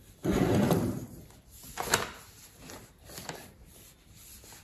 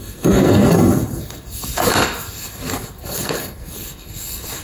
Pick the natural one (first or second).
first